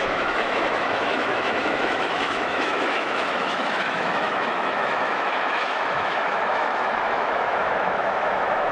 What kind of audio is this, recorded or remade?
remade